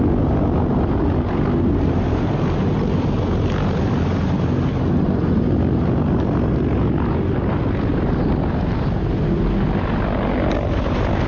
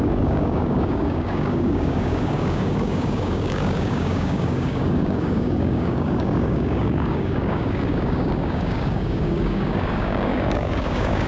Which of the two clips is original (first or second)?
first